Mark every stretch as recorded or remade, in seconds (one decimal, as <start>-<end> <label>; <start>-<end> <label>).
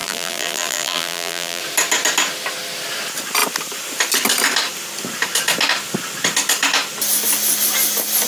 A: 0.0-1.6 remade; 1.6-8.3 recorded